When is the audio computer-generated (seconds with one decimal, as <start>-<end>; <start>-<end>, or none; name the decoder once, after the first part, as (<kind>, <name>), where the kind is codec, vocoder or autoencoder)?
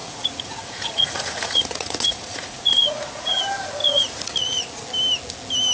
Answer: 0.0-3.4 (vocoder, Vocos); 3.8-4.8